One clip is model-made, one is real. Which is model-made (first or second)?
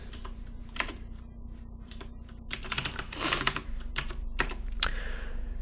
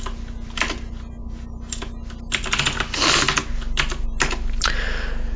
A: first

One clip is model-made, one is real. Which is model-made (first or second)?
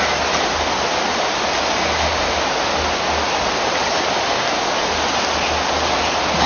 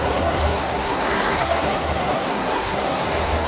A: second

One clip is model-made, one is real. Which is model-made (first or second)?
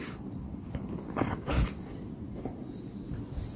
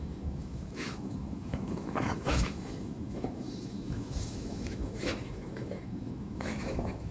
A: second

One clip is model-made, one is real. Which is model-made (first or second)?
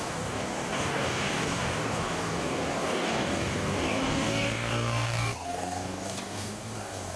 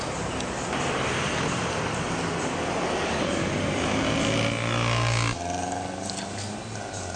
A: first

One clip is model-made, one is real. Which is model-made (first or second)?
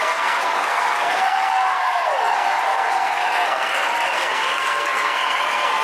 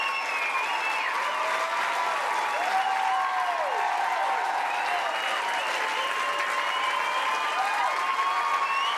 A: first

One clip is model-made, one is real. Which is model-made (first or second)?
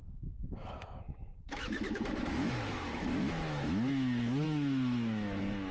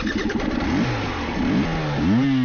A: first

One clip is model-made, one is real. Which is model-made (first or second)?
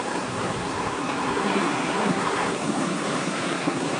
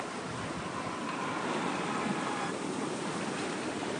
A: first